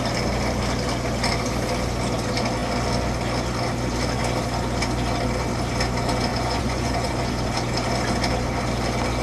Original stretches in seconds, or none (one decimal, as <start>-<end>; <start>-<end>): 0.0-6.3; 7.3-9.2